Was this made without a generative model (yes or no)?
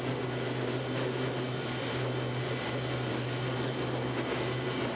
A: yes